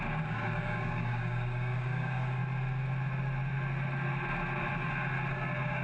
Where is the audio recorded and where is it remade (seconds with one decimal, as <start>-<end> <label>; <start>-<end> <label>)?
0.0-2.4 remade; 2.4-5.3 recorded; 5.3-5.8 remade